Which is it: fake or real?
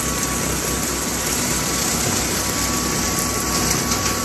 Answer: real